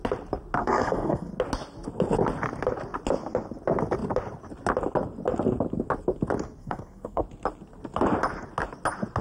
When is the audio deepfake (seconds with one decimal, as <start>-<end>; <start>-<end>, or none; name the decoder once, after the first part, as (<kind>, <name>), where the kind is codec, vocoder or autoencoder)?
0.6-1.3 (codec, SNAC); 6.6-7.2